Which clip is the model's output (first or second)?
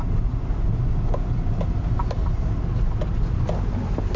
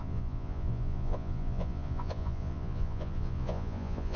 second